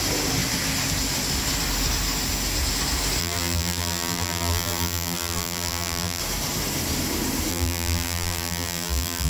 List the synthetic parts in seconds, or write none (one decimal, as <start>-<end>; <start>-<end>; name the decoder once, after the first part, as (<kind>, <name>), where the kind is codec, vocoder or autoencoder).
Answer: 3.2-6.2 (vocoder, BigVGAN v2); 7.5-9.3